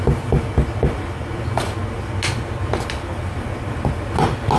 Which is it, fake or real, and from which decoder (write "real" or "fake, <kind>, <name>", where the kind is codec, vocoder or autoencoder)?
real